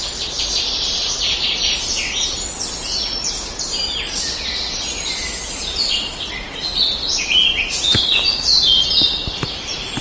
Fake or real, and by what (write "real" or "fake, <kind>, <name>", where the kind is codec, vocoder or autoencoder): real